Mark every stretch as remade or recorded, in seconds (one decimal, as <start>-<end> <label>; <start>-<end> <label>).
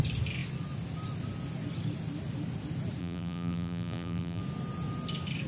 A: 0.0-3.0 recorded; 3.0-4.4 remade; 4.4-5.5 recorded